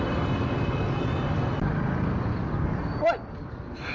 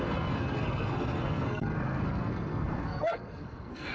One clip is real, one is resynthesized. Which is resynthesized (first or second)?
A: second